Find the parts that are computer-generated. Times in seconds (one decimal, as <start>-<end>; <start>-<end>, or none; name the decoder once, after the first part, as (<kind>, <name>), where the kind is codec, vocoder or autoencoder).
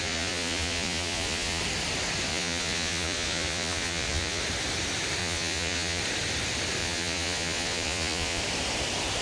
0.0-1.6 (vocoder, Vocos); 2.3-4.4; 5.2-6.0; 6.8-8.4